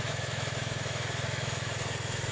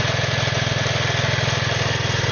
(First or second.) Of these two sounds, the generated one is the first